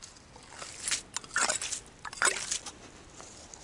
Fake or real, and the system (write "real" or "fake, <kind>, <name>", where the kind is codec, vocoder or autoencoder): real